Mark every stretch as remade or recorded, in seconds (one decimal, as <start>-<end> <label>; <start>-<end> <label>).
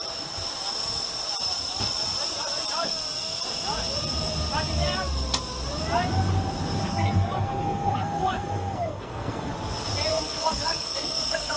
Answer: 0.0-6.8 recorded; 6.8-9.5 remade; 9.5-10.1 recorded; 10.1-11.6 remade